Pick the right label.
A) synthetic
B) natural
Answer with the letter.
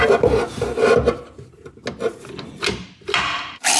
B